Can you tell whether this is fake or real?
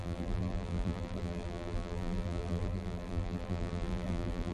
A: fake